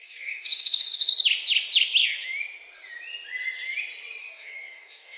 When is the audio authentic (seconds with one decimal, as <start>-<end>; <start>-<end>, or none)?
1.1-4.2